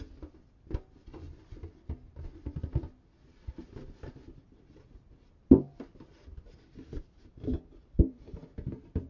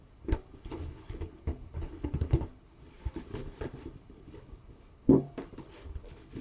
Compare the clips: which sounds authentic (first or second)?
first